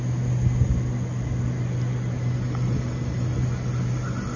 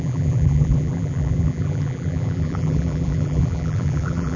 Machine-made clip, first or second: second